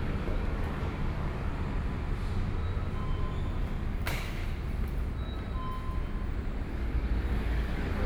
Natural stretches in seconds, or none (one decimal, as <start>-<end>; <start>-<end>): 1.5-3.6; 4.4-6.7